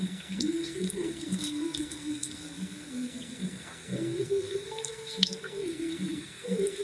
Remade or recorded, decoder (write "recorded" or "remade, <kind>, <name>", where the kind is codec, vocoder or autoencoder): remade, codec, SNAC